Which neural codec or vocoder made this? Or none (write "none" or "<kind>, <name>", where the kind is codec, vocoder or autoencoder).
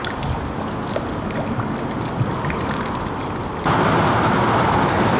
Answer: none